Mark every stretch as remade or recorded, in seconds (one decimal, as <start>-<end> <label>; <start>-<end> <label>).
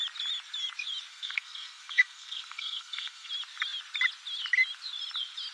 0.0-1.1 recorded; 1.1-3.3 remade; 3.3-5.5 recorded